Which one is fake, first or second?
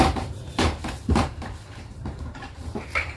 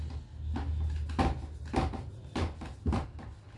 first